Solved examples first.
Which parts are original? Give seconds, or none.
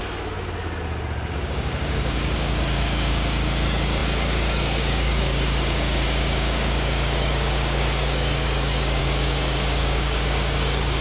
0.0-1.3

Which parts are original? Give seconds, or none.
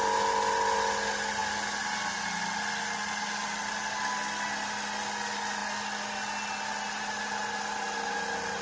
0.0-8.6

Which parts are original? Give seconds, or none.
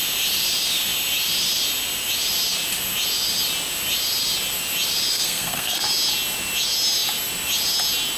0.0-5.1; 5.8-8.2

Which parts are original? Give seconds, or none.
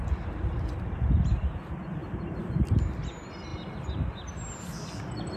0.0-2.0; 2.5-5.4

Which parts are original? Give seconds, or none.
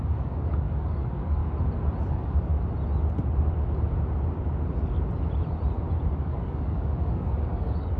1.4-2.1; 2.5-6.2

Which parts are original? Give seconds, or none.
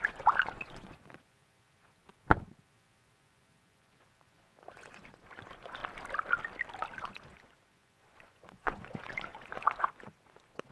5.8-7.0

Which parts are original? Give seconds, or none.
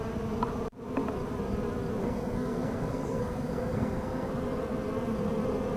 0.0-2.0; 4.3-5.8